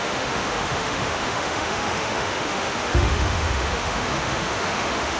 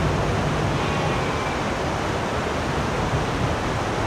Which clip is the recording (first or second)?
second